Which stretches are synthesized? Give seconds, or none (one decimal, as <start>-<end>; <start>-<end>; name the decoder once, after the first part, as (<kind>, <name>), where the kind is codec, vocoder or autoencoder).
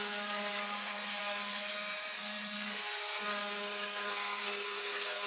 0.0-5.3 (codec, SNAC)